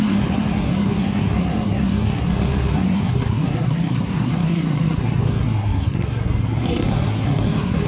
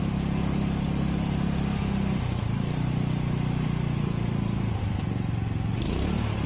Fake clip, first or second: first